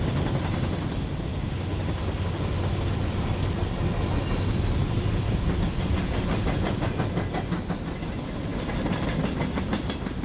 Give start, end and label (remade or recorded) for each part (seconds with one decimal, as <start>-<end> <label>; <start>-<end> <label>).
0.0-10.2 recorded